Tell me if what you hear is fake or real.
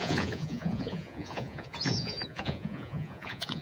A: fake